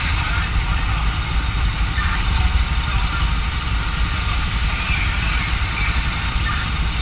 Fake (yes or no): no